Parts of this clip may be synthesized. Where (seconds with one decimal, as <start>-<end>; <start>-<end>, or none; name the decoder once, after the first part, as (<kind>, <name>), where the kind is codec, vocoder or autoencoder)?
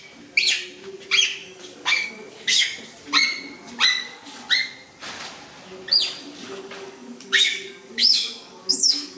1.4-2.8 (codec, DAC); 3.9-4.4; 6.2-9.2